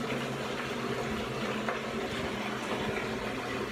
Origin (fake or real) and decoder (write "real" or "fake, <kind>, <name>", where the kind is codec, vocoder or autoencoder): real